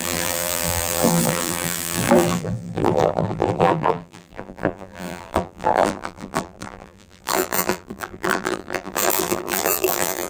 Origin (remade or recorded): remade